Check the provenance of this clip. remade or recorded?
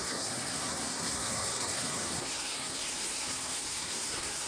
remade